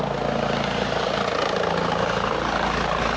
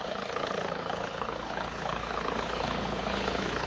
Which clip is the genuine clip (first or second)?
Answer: first